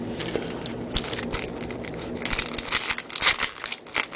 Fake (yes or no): no